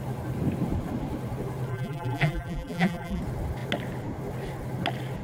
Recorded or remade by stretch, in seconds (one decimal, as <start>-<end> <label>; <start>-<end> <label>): 0.0-1.7 recorded; 1.7-3.2 remade; 3.2-5.2 recorded